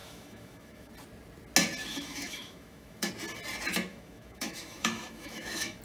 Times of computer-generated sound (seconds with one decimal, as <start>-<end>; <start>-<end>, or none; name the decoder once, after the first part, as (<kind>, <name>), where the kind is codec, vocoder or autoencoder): 0.0-0.9 (autoencoder, DAC-VAE); 1.9-3.1; 3.9-5.8